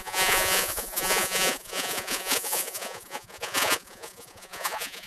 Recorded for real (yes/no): no